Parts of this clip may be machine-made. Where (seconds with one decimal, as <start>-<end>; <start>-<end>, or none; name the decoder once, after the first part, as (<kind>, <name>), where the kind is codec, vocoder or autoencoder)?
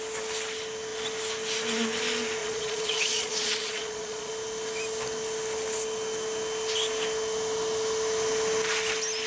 2.4-4.3 (vocoder, Vocos)